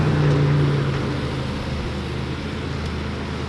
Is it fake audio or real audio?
real